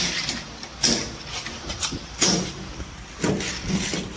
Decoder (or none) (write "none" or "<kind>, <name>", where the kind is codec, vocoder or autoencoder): none